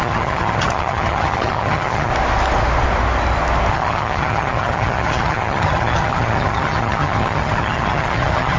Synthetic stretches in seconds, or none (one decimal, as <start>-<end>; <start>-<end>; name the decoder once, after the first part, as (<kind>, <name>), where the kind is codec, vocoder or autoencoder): 0.0-2.1 (vocoder, HiFi-GAN); 3.7-8.6